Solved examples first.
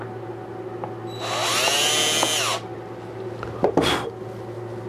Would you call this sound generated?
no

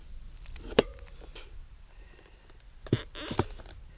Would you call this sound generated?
no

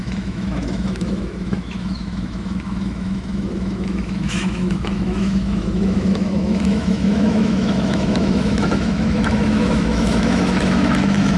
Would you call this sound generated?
yes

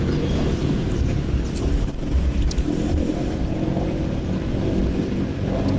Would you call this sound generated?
no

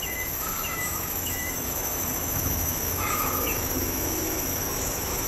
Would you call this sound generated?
yes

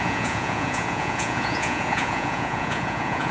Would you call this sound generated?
yes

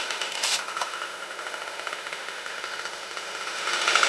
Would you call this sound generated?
yes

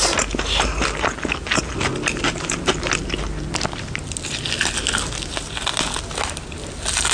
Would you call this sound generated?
no